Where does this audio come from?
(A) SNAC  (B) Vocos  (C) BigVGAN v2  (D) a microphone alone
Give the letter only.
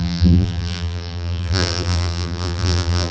C